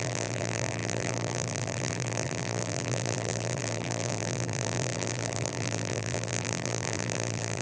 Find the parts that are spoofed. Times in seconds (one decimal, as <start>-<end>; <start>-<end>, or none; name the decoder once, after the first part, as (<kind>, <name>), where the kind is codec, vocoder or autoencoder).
0.0-7.6 (vocoder, BigVGAN v2)